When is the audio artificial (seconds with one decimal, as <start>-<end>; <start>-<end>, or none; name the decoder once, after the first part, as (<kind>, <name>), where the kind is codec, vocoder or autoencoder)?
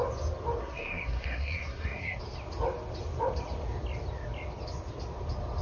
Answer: 0.6-2.2 (codec, SNAC)